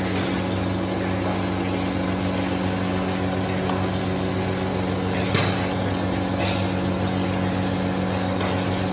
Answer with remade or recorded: recorded